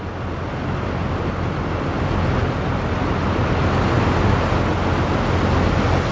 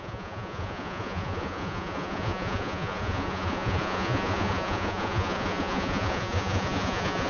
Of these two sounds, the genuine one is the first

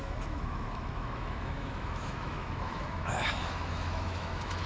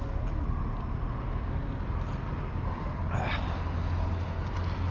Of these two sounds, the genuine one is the second